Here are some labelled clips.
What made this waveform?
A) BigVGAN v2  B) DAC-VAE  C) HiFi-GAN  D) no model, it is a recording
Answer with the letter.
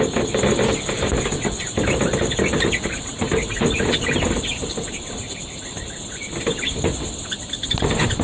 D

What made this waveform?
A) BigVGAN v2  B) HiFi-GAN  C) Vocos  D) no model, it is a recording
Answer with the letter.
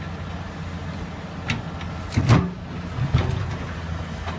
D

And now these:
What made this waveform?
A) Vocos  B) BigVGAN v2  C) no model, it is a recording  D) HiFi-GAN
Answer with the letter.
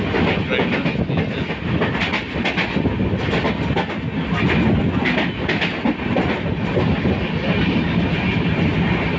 C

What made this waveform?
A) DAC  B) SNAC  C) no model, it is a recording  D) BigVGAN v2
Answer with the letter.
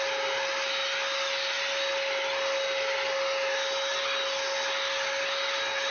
C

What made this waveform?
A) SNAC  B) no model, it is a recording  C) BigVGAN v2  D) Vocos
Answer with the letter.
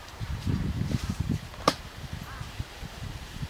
C